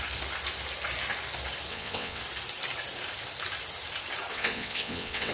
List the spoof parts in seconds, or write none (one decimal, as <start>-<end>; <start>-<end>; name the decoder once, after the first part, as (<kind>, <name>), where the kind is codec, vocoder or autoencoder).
1.7-2.2 (vocoder, WaveNeXt); 4.3-5.3